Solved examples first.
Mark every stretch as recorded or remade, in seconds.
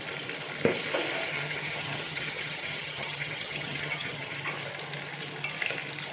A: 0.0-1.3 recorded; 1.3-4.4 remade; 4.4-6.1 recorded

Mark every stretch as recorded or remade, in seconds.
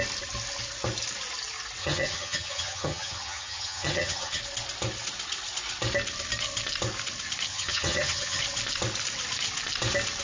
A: 0.0-1.8 recorded; 1.8-4.4 remade; 4.4-7.5 recorded; 7.5-8.4 remade; 8.4-10.2 recorded